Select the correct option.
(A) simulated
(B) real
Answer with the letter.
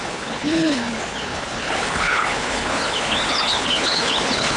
A